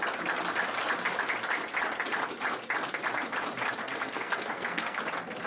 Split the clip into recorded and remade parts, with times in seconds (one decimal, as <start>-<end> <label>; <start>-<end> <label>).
0.0-3.8 recorded; 3.8-5.0 remade; 5.0-5.5 recorded